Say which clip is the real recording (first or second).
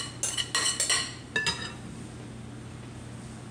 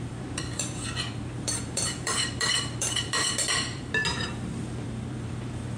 first